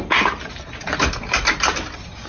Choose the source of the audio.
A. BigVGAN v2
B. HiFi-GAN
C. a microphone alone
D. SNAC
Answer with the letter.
C